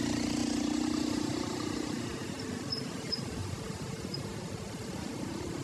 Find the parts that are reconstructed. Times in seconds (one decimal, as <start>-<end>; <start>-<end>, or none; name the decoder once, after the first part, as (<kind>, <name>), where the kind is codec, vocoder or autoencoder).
0.0-0.4 (vocoder, BigVGAN v2); 2.4-3.4; 4.4-5.6